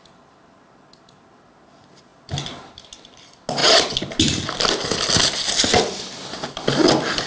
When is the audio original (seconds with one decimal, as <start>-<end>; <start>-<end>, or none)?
0.0-7.3